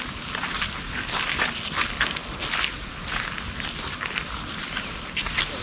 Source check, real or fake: real